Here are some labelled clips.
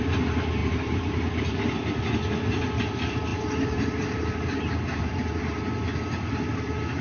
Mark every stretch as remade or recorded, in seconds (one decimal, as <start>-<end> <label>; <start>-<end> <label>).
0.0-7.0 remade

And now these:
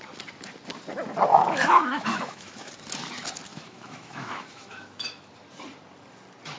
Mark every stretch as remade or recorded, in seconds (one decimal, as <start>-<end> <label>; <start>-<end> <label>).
0.0-1.3 recorded; 1.3-2.7 remade; 2.7-3.5 recorded; 3.5-5.3 remade; 5.3-6.6 recorded

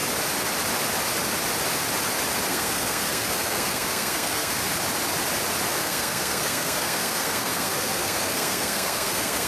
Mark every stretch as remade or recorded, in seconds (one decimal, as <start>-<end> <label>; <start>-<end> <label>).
0.0-2.5 recorded; 2.5-4.6 remade; 4.6-5.7 recorded; 5.7-9.5 remade

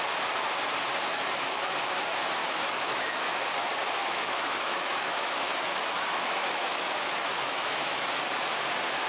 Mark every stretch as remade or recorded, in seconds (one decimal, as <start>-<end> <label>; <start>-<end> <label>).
0.0-1.1 recorded; 1.1-1.7 remade; 1.7-2.4 recorded; 2.4-3.4 remade; 3.4-4.0 recorded; 4.0-8.1 remade; 8.1-9.1 recorded

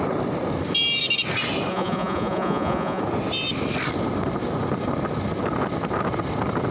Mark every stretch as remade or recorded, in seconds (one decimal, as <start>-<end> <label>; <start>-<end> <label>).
0.0-1.7 recorded; 1.7-3.0 remade; 3.0-6.7 recorded